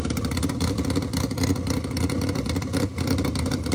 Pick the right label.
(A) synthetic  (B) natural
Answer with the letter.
B